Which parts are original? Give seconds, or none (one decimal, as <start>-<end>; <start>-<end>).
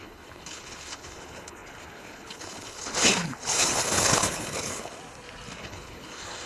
4.9-5.6